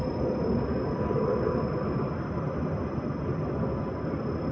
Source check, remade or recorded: recorded